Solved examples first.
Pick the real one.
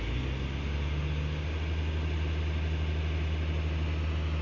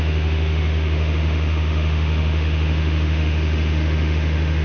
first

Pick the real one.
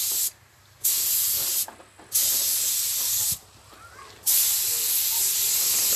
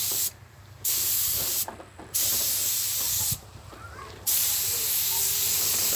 first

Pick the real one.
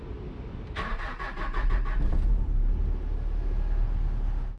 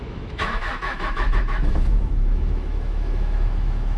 first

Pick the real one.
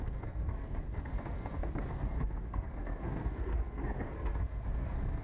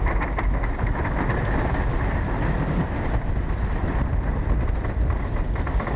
second